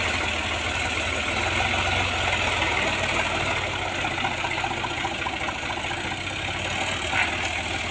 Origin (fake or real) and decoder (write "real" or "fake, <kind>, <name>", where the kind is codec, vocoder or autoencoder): real